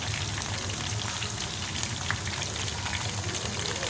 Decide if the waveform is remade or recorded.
recorded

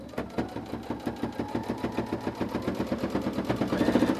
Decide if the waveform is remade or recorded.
recorded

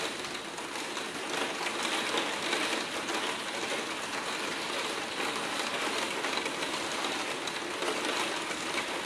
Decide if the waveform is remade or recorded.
recorded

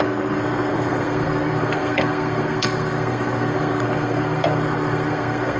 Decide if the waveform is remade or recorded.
remade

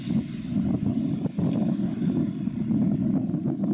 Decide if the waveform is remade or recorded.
recorded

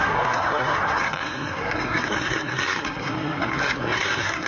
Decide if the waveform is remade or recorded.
remade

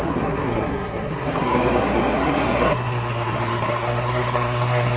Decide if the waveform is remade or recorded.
remade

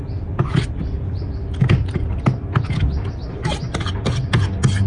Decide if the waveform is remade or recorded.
recorded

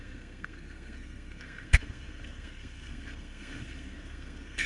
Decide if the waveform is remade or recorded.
remade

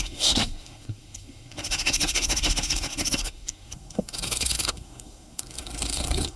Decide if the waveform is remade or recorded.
remade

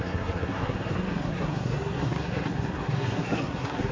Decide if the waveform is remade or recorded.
remade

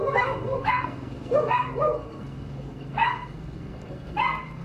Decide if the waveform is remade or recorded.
remade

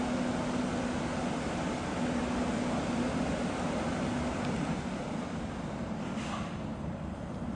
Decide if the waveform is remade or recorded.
recorded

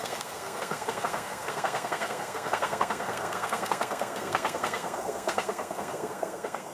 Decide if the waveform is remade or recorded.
remade